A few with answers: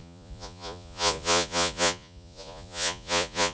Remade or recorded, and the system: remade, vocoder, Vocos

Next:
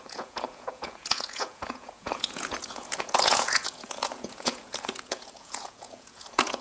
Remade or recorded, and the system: remade, vocoder, Vocos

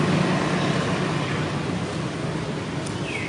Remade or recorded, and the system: recorded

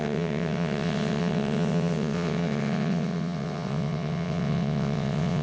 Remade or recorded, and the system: remade, vocoder, WaveNeXt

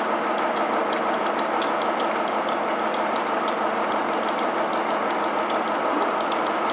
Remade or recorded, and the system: recorded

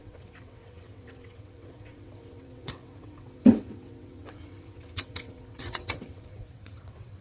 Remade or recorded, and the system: remade, vocoder, WaveNeXt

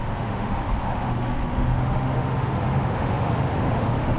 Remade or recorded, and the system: remade, autoencoder, DAC-VAE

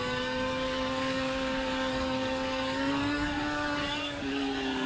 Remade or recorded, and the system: remade, codec, DAC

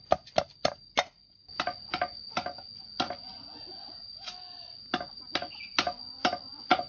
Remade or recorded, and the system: recorded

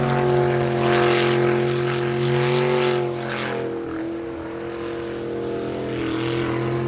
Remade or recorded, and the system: recorded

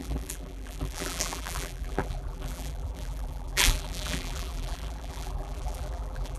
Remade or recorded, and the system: remade, vocoder, BigVGAN v2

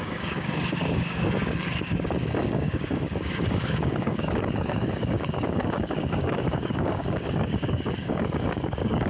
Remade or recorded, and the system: remade, codec, DAC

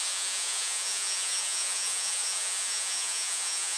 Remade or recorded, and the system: remade, vocoder, Vocos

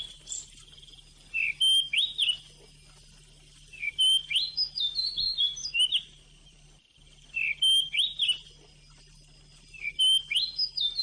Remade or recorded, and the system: recorded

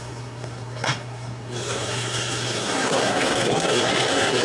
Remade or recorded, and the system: remade, codec, SNAC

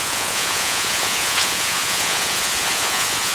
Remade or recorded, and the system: remade, vocoder, Vocos